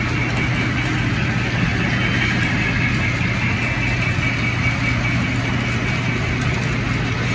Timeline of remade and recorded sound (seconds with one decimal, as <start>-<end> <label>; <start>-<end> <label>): 0.0-7.3 recorded